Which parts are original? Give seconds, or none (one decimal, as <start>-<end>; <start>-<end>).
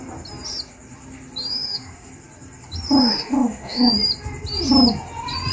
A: 0.0-1.5; 2.1-3.0; 3.9-5.5